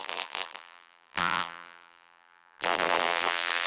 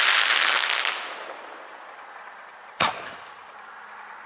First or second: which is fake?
first